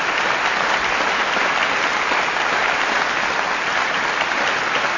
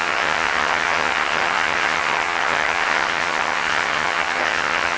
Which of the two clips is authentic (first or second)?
first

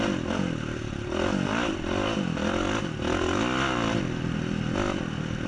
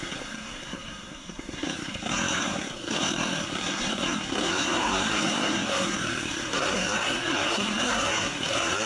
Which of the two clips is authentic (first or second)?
first